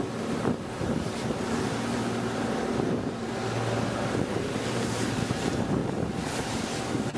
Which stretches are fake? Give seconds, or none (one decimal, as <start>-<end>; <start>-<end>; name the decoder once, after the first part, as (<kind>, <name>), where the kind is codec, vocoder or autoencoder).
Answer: 0.0-3.4 (vocoder, BigVGAN v2); 4.2-7.2